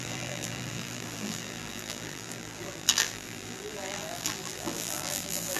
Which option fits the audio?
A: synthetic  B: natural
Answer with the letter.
A